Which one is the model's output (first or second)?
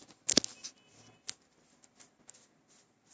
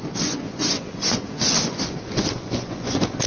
second